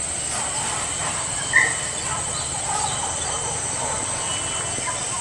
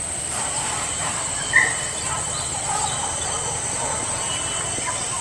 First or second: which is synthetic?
second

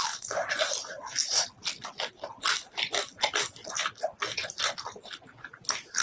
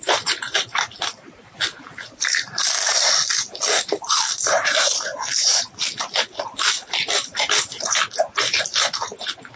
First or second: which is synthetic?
second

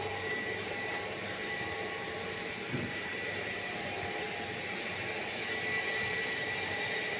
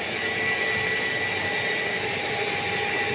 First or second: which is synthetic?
first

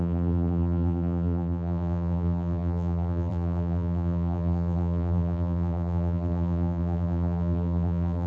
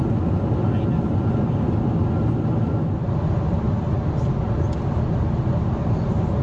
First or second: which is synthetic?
first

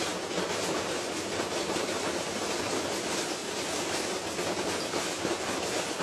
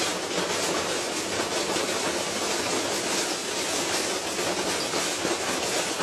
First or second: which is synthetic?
first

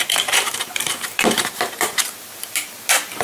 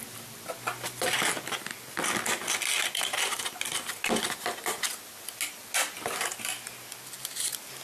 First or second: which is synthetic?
first